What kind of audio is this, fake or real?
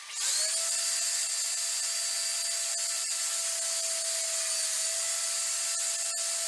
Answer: real